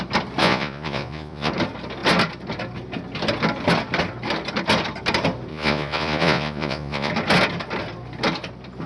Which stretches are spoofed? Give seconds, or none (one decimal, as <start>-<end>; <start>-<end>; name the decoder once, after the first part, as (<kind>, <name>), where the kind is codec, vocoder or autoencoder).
0.4-1.5 (vocoder, Vocos); 5.5-7.1